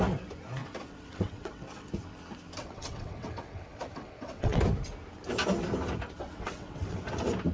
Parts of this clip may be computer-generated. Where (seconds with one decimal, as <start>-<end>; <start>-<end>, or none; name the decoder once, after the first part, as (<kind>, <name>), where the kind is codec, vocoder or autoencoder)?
0.6-1.9 (vocoder, WaveNeXt); 2.6-4.6; 6.2-7.0